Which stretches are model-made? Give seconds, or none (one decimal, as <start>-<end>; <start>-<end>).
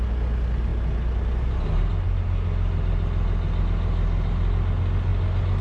none